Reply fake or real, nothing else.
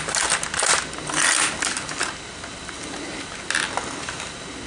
real